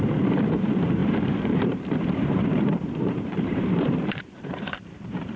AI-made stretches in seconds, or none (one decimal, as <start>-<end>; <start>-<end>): 0.0-5.4